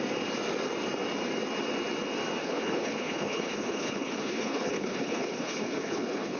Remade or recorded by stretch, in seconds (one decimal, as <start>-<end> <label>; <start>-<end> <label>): 0.0-2.4 recorded; 2.4-6.4 remade